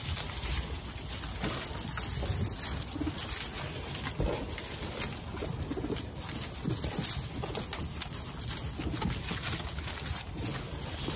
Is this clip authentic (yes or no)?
yes